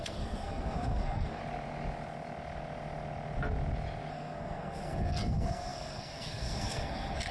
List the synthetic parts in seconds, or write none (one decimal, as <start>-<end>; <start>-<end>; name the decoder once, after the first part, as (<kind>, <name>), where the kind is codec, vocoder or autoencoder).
0.0-1.4 (codec, SNAC); 4.1-7.3